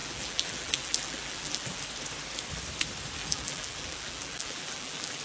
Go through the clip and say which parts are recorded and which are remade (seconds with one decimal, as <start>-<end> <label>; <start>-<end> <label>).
0.0-1.8 remade; 1.8-3.2 recorded; 3.2-5.2 remade